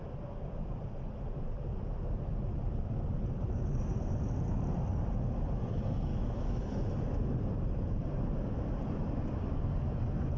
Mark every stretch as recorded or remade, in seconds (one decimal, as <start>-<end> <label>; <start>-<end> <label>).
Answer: 0.0-6.1 recorded; 6.1-6.7 remade; 6.7-10.4 recorded